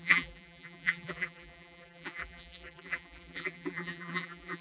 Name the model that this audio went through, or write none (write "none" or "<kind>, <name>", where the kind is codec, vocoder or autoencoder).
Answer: vocoder, BigVGAN v2